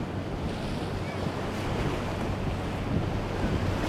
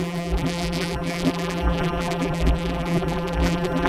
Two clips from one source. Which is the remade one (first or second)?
second